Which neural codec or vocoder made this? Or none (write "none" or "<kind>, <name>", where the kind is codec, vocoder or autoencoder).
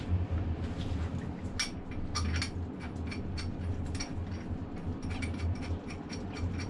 none